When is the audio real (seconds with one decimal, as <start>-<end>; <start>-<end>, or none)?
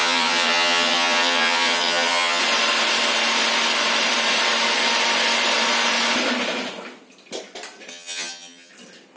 2.4-7.9; 8.7-9.2